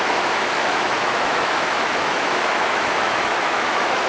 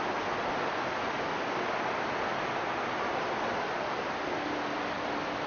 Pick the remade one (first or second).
first